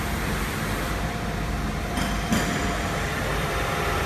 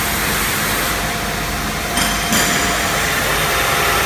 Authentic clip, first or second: second